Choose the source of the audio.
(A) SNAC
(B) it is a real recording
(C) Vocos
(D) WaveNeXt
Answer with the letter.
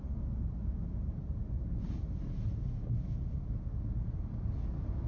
B